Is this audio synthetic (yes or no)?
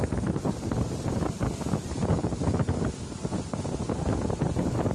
no